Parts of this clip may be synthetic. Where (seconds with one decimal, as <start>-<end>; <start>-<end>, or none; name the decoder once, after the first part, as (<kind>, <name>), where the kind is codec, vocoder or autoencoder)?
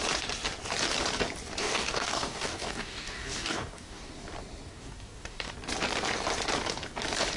1.6-4.1 (codec, DAC); 4.7-5.5